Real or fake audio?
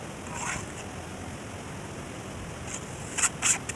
real